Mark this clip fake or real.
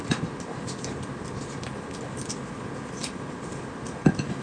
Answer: real